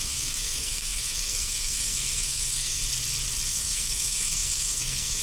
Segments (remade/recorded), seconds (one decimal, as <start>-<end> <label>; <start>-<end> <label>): 0.0-2.8 remade; 2.8-3.5 recorded; 3.5-5.2 remade